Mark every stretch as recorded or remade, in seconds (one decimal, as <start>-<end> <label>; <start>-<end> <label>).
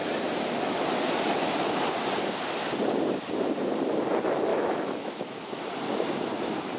0.0-4.5 recorded; 4.5-5.6 remade; 5.6-6.8 recorded